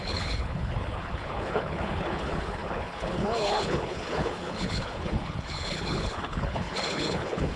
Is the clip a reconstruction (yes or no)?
yes